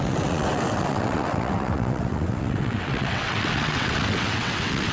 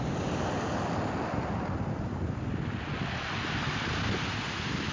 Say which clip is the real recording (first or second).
second